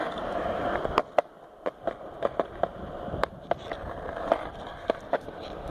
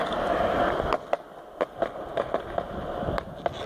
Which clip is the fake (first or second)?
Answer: first